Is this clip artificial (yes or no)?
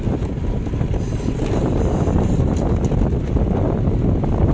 no